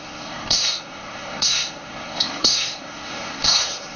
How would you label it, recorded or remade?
remade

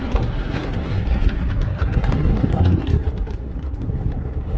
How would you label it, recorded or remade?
remade